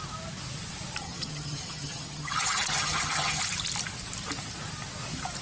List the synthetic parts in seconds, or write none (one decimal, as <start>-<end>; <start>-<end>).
1.0-3.4